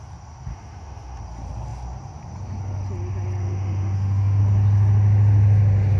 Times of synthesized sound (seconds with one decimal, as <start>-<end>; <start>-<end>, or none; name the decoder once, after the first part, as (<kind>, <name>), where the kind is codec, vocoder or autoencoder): 0.5-1.2 (autoencoder, DAC-VAE); 3.4-4.4